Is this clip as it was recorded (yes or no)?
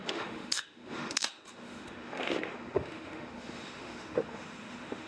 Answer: no